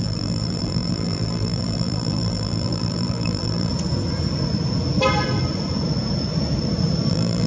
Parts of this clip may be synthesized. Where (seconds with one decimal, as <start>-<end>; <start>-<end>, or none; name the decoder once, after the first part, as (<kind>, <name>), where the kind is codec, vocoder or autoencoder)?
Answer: 0.0-3.7 (vocoder, BigVGAN v2); 7.1-7.5